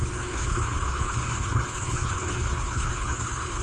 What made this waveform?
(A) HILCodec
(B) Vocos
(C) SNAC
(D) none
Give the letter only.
A